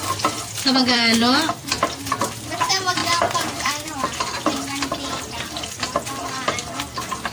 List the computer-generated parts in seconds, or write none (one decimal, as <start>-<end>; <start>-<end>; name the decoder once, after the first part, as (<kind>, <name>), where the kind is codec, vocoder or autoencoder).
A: 0.8-1.7 (vocoder, BigVGAN v2); 3.0-5.7